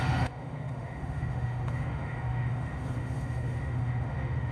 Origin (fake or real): fake